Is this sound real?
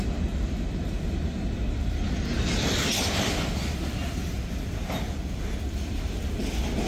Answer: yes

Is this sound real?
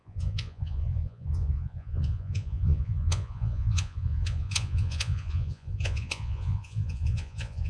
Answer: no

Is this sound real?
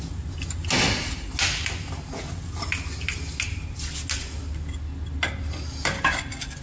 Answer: yes